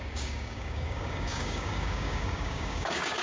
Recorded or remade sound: remade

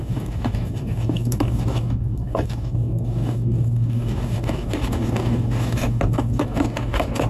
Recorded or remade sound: remade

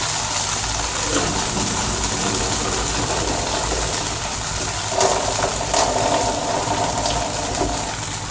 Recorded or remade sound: recorded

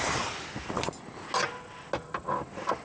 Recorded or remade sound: recorded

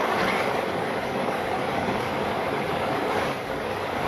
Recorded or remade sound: remade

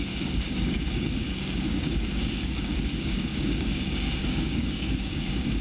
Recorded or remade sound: remade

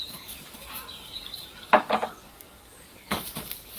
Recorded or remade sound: remade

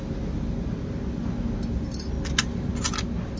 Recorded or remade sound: recorded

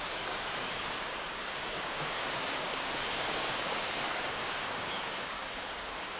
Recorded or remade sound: remade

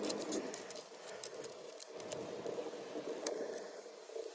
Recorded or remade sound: recorded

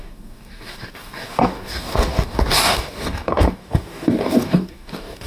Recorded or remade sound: remade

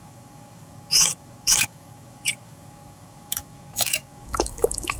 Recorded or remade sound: remade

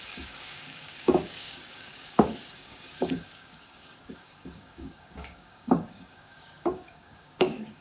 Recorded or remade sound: remade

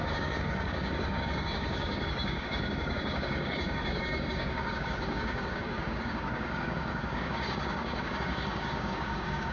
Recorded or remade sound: remade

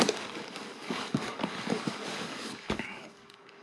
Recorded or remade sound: remade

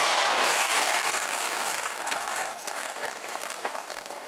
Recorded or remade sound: remade